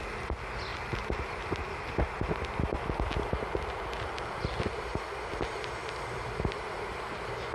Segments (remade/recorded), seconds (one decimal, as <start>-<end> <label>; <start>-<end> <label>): 0.0-7.5 recorded